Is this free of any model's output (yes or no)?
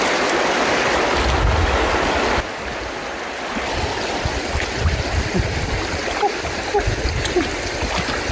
yes